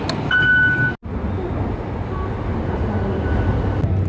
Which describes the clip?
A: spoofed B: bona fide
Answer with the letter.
B